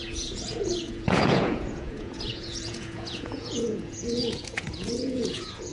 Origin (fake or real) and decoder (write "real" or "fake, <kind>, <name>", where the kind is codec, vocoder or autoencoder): fake, vocoder, Vocos